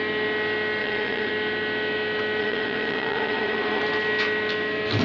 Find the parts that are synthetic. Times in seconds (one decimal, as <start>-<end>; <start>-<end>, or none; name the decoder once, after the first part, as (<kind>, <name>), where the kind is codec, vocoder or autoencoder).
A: 0.8-1.3 (vocoder, WaveNeXt); 2.4-3.8